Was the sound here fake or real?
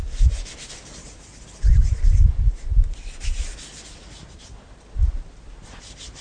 real